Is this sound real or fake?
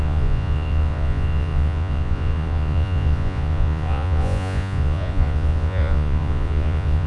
fake